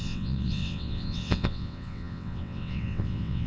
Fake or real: fake